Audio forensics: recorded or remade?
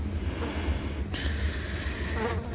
recorded